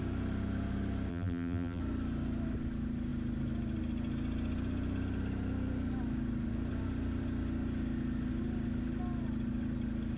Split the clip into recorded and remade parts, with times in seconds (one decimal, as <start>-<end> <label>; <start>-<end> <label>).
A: 0.0-1.1 recorded; 1.1-1.8 remade; 1.8-10.2 recorded